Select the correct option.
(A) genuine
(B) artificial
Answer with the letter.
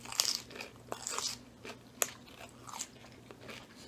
A